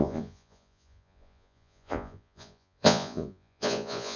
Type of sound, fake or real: fake